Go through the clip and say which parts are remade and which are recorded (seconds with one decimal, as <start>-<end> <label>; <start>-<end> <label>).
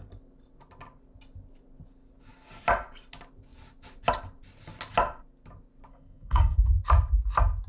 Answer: 0.0-5.9 recorded; 5.9-6.8 remade; 6.8-7.7 recorded